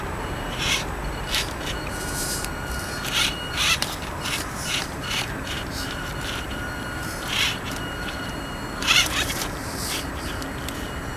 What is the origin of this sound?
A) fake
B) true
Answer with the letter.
A